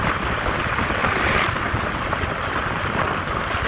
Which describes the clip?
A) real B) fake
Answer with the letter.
B